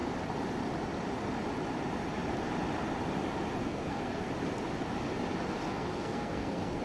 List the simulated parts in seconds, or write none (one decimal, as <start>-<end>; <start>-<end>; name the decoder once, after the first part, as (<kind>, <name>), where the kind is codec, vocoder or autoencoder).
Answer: 3.6-4.3 (codec, SNAC); 5.6-6.8

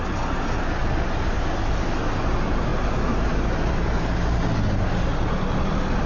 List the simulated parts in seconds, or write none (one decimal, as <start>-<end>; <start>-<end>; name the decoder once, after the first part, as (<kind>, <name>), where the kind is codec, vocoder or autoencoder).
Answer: none

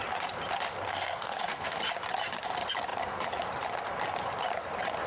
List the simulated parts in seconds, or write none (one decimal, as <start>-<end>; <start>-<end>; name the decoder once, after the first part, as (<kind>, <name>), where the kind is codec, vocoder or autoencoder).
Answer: 0.9-1.8 (codec, SNAC)